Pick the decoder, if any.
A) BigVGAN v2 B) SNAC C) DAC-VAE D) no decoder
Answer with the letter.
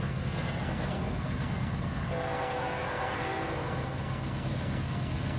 B